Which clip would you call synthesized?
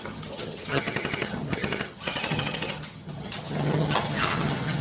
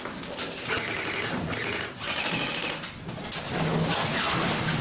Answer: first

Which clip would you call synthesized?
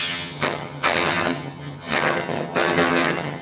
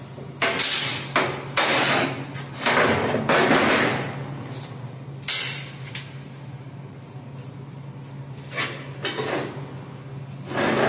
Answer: first